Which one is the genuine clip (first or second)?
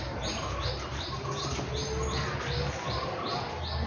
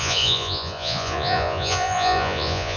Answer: first